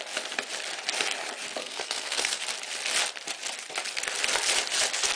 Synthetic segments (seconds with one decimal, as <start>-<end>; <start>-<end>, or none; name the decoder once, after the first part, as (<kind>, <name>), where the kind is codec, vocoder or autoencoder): 1.6-2.4 (codec, SNAC)